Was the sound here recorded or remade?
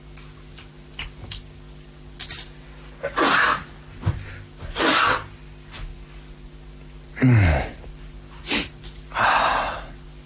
recorded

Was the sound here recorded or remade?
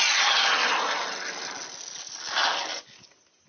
recorded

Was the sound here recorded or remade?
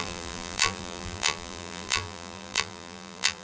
remade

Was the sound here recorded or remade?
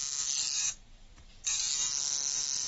remade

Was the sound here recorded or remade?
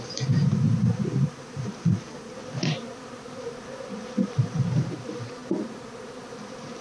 remade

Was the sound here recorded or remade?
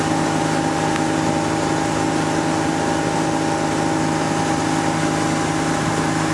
recorded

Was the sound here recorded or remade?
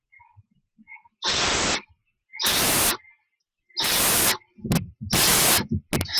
recorded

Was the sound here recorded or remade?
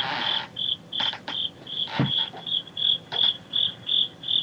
recorded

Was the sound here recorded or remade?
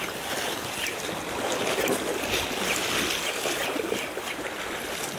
recorded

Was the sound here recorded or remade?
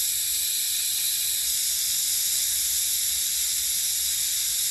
recorded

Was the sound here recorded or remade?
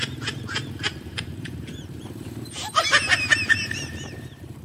remade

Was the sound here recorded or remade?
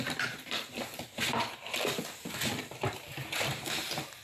remade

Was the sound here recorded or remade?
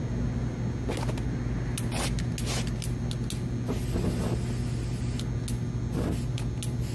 recorded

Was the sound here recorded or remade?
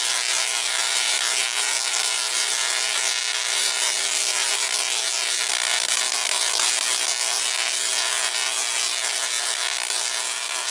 recorded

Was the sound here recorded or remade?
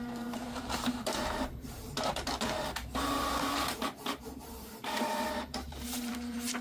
remade